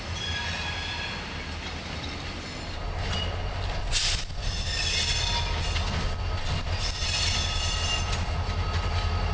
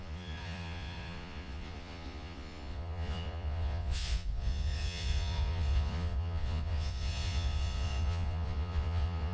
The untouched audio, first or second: first